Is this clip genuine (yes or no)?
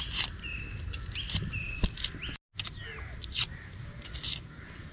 yes